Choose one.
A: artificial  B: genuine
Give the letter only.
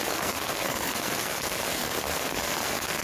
A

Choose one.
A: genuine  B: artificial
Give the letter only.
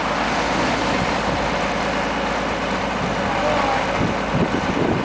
A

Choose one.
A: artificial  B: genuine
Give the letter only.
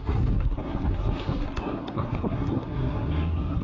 A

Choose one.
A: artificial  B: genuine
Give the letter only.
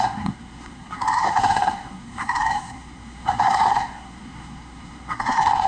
A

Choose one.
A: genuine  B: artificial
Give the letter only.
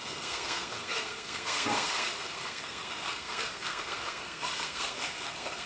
B